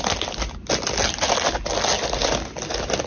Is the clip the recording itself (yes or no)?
yes